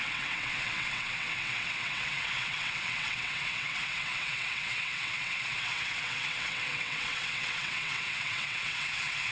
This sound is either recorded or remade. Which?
remade